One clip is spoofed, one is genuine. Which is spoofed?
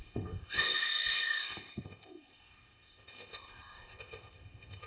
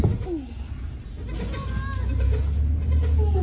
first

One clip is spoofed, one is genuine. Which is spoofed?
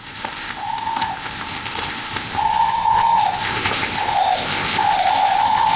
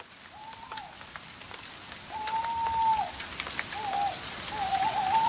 first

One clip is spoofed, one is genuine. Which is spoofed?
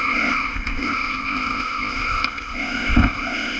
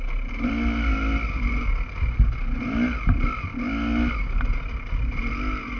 first